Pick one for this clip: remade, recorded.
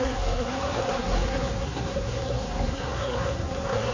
remade